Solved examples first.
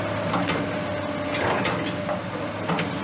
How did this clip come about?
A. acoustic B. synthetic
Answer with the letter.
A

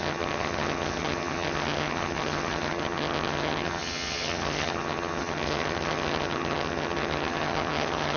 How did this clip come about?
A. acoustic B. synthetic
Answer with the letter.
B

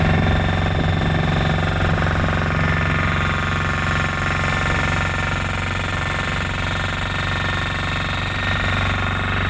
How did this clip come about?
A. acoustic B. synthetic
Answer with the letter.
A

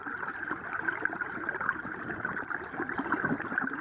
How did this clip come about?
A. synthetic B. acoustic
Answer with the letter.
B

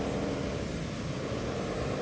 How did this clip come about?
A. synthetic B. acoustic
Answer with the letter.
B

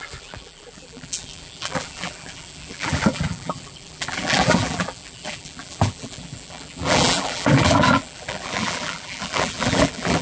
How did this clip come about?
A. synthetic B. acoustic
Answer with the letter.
A